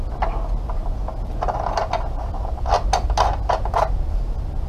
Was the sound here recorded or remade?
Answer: recorded